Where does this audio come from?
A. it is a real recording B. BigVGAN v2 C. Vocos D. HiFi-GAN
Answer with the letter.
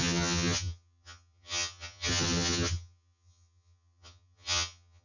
D